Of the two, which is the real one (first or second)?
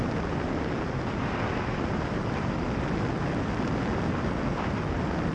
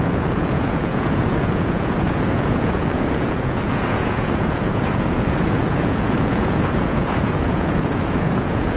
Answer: first